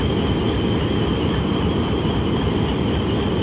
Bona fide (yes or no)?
yes